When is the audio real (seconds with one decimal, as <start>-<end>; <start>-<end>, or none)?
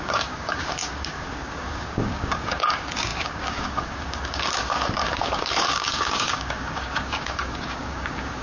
none